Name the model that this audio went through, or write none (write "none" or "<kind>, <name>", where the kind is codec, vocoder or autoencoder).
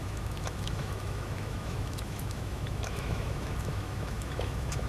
autoencoder, DAC-VAE